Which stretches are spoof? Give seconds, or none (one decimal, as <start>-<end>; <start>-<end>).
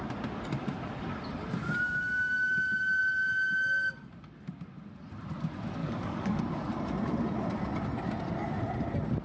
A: 5.8-6.4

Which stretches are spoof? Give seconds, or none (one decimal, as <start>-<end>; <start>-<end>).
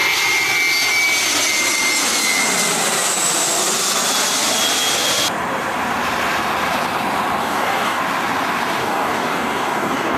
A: 7.4-8.0; 8.8-10.2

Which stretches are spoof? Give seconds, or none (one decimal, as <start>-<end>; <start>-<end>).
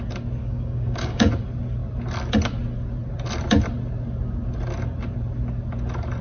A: 0.4-1.3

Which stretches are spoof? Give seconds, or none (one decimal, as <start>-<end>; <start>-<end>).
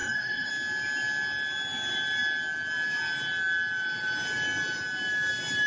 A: 0.0-0.5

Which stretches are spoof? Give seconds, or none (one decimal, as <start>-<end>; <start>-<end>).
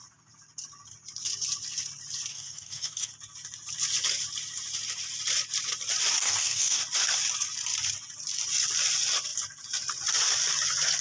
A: 2.3-3.1; 6.2-6.8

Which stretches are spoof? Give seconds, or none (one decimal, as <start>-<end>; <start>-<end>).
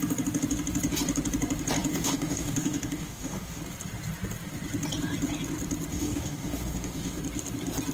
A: 1.9-3.6; 5.9-7.2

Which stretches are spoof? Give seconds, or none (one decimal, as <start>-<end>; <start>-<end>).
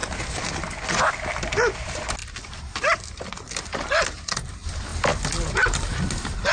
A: none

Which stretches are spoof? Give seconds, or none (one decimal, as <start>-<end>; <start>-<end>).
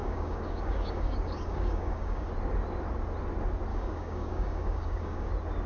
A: 0.0-2.3; 3.7-5.3